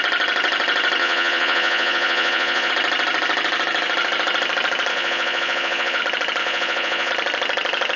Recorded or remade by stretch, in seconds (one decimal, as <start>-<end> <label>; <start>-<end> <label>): 0.0-1.0 recorded; 1.0-2.7 remade; 2.7-4.9 recorded; 4.9-6.0 remade; 6.0-6.4 recorded; 6.4-7.1 remade; 7.1-8.0 recorded